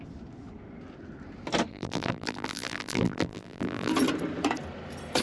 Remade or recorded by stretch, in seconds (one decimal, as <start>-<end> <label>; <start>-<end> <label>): 0.0-1.7 recorded; 1.7-3.9 remade; 3.9-5.2 recorded